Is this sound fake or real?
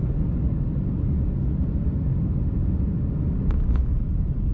real